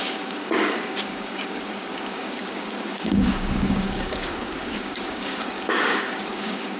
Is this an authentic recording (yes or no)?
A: no